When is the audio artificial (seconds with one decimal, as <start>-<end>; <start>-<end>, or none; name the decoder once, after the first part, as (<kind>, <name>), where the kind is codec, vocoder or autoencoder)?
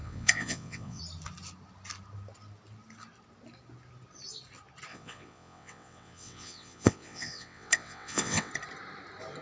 0.0-1.0 (vocoder, WaveNeXt); 4.9-8.5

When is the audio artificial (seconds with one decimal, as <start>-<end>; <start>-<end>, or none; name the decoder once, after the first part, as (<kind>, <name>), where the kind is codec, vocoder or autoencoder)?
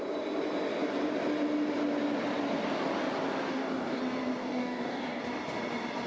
3.5-4.0 (codec, DAC); 4.4-5.2